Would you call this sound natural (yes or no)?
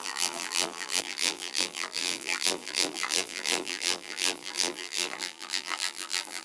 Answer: no